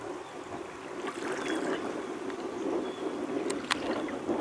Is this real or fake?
real